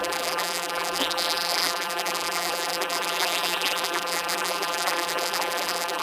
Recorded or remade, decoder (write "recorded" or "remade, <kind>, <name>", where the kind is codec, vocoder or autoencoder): remade, vocoder, BigVGAN v2